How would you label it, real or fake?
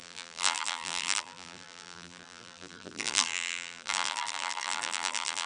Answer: fake